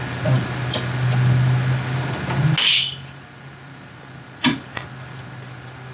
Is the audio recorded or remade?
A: recorded